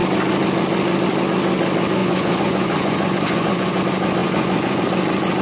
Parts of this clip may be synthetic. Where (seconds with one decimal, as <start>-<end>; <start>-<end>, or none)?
2.0-3.8; 4.2-4.8